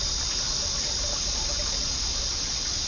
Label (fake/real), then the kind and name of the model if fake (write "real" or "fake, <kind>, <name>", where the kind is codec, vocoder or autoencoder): real